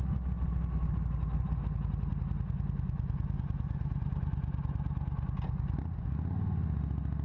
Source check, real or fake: real